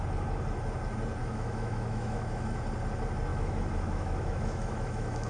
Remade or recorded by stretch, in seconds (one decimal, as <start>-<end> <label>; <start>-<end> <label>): 0.0-1.2 recorded; 1.2-2.6 remade; 2.6-3.3 recorded; 3.3-5.3 remade